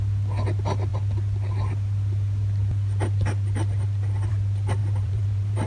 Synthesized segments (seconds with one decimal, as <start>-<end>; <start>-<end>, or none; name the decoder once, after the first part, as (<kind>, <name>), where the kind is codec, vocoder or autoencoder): 4.8-5.7 (vocoder, BigVGAN v2)